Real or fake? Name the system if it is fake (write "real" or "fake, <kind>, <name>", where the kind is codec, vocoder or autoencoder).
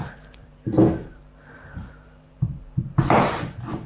fake, vocoder, BigVGAN v2